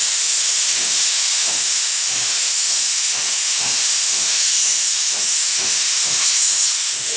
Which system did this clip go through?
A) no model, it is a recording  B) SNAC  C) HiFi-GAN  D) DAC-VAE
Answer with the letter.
D